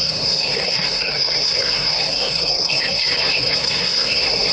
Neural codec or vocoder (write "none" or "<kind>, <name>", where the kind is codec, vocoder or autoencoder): codec, SNAC